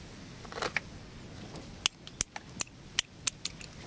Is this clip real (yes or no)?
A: yes